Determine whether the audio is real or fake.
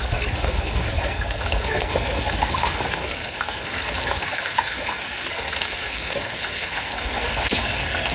fake